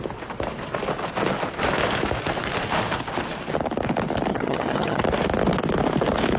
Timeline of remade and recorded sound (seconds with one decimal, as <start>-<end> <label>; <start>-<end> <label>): 0.0-4.3 recorded; 4.3-5.0 remade; 5.0-6.4 recorded